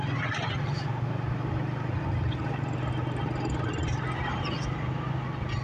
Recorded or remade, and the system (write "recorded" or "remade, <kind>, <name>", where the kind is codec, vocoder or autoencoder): recorded